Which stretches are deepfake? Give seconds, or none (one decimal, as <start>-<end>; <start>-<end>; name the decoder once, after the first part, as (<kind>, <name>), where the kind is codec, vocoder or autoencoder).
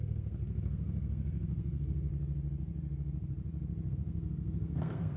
0.0-2.1 (codec, SNAC); 3.9-5.2